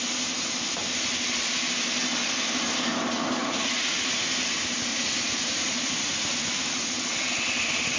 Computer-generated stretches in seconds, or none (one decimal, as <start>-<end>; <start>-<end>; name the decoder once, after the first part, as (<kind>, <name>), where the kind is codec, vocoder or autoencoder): 3.4-4.3 (vocoder, Vocos); 4.9-6.9